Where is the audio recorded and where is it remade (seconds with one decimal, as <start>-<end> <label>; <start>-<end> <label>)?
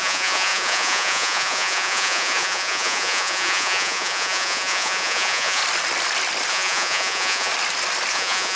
0.0-5.6 remade; 5.6-6.5 recorded; 6.5-7.5 remade; 7.5-8.1 recorded; 8.1-8.6 remade